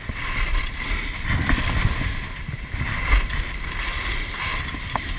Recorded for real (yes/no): yes